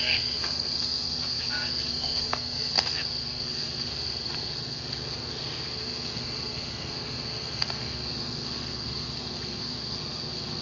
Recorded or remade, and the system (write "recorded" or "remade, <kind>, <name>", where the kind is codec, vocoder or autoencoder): remade, codec, SNAC